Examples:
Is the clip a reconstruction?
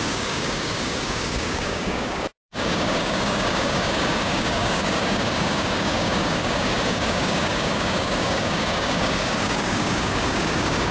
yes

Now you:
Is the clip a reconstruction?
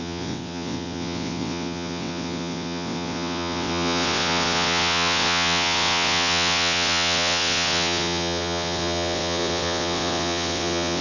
yes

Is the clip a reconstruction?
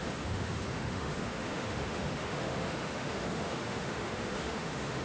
yes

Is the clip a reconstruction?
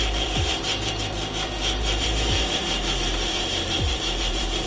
yes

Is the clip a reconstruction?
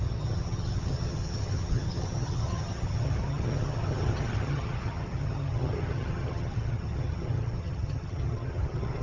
yes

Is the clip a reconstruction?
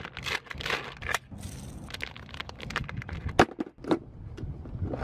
no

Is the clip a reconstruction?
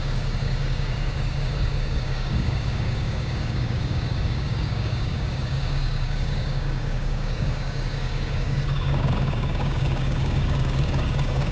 yes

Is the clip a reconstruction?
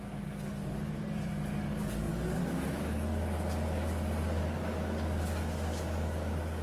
yes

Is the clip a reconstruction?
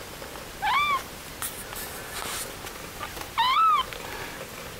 no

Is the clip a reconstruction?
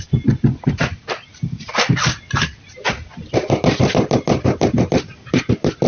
no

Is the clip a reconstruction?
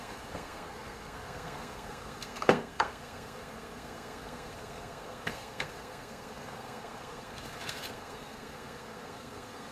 yes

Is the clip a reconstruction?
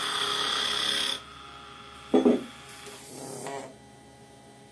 no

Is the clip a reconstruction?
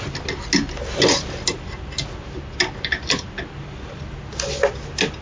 no